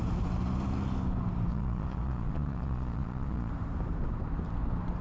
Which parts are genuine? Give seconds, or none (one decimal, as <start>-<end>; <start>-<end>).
0.0-1.5; 3.5-5.0